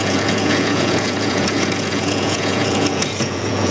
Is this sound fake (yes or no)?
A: yes